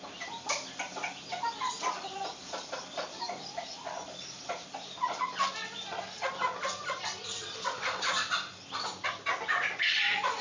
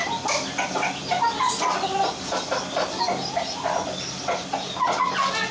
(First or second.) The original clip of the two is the second